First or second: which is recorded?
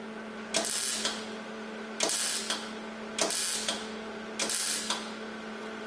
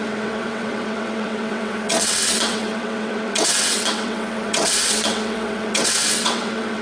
first